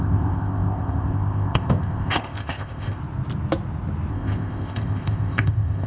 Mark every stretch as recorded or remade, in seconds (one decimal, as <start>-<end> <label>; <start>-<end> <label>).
0.0-3.0 remade; 3.0-4.1 recorded; 4.1-5.9 remade